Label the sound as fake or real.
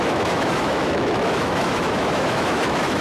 fake